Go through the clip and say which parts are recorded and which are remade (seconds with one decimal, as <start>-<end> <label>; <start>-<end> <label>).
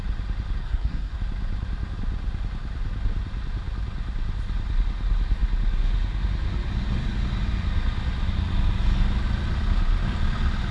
0.0-0.6 recorded; 0.6-1.2 remade; 1.2-10.7 recorded